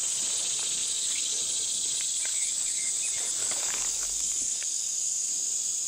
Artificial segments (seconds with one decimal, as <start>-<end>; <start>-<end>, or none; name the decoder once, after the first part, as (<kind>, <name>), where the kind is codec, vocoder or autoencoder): 0.8-1.4 (codec, DAC); 2.3-2.9; 3.4-5.3